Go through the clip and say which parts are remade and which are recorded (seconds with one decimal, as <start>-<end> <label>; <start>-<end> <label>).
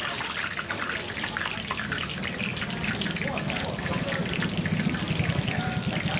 0.0-6.2 recorded